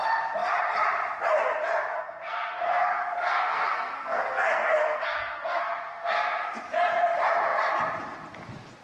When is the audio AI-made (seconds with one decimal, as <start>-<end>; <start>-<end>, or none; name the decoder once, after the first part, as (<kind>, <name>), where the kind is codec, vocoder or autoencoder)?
1.9-6.6 (codec, SNAC)